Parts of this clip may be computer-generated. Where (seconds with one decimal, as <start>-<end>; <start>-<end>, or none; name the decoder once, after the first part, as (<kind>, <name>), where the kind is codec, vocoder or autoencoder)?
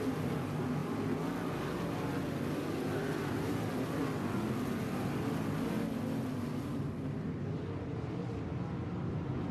0.0-0.8 (vocoder, BigVGAN v2); 3.3-4.0; 9.1-9.5